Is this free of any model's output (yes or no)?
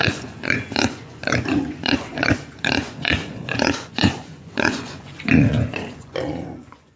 no